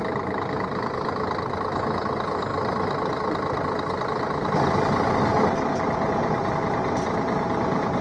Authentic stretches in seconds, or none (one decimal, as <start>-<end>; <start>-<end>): 0.0-8.0